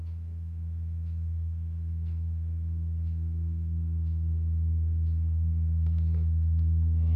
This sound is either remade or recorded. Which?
remade